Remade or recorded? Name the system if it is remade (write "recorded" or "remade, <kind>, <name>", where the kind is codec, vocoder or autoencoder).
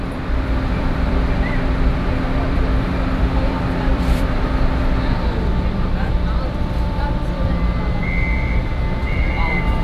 remade, vocoder, BigVGAN v2